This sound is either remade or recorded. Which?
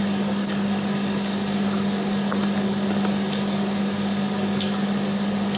remade